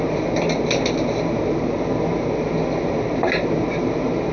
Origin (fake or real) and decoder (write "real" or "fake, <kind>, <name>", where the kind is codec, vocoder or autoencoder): fake, vocoder, BigVGAN v2